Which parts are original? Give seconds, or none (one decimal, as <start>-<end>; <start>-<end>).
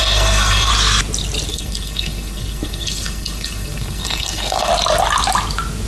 0.7-1.5; 4.7-5.9